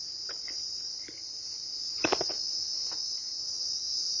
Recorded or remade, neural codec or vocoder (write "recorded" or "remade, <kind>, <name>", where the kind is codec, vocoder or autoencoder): recorded